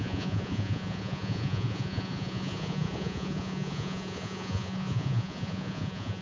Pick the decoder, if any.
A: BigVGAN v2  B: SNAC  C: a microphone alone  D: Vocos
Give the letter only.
D